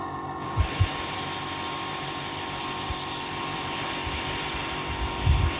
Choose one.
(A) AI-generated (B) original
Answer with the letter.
A